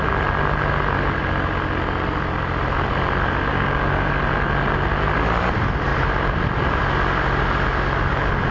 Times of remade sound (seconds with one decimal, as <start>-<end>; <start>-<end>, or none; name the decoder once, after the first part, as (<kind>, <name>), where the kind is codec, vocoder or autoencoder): 3.5-4.1 (codec, DAC)